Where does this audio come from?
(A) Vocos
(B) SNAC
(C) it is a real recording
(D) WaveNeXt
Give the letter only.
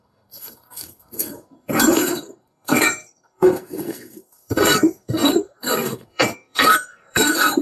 B